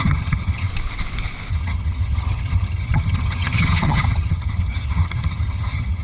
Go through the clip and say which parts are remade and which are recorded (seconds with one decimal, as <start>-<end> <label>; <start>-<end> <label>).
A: 0.0-0.7 remade; 0.7-1.5 recorded; 1.5-6.0 remade